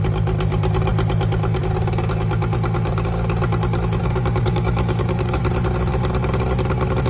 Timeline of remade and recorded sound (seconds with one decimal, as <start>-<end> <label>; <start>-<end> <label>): 0.0-4.0 recorded; 4.0-5.4 remade; 5.4-7.1 recorded